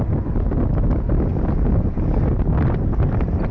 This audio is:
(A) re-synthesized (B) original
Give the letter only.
B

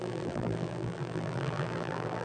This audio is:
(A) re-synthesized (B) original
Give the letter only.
A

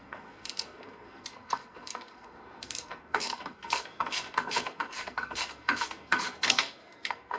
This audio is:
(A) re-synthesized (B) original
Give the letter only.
A